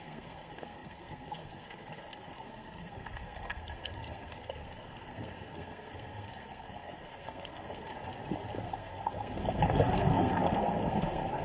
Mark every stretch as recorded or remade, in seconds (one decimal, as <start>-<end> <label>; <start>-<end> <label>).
0.0-7.9 remade; 7.9-8.6 recorded; 8.6-11.4 remade